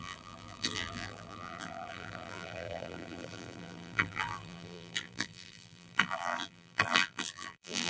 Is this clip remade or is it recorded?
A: remade